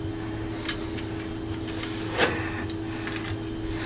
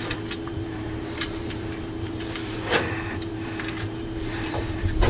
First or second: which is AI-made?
second